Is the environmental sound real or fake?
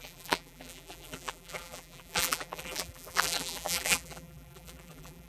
fake